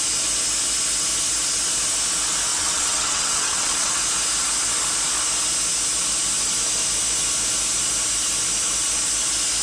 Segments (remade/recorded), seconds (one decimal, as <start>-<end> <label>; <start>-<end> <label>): 0.0-2.5 recorded; 2.5-3.9 remade; 3.9-9.6 recorded